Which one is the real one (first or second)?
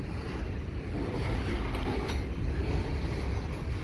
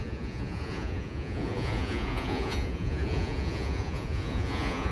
first